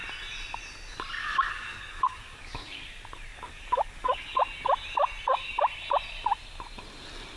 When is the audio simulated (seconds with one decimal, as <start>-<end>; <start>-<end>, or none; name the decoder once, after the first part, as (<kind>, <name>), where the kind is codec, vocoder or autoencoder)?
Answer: 1.2-2.8 (codec, DAC); 3.3-4.4